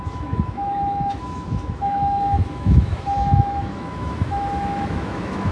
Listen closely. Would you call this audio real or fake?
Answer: fake